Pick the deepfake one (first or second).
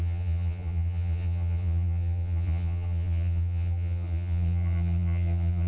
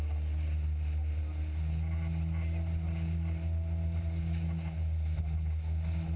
first